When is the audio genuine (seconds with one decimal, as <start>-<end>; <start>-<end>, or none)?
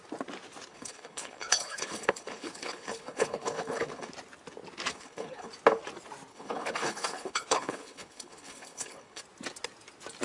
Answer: 0.0-0.7; 4.1-4.9; 5.5-6.3; 9.2-10.2